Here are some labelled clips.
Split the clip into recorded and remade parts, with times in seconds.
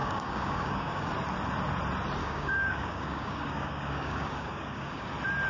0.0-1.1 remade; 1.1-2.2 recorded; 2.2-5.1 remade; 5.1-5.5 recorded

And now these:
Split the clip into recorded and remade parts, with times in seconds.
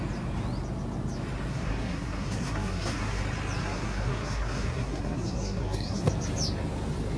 0.0-1.5 recorded; 1.5-3.2 remade; 3.2-3.6 recorded; 3.6-6.1 remade; 6.1-7.2 recorded